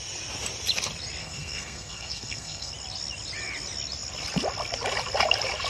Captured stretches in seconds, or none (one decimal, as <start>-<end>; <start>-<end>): 0.0-1.2; 2.7-5.7